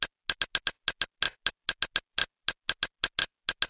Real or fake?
real